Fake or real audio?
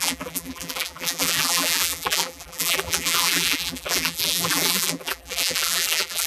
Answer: fake